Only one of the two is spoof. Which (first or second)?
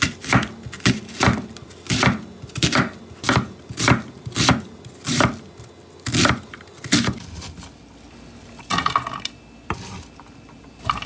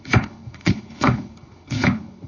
second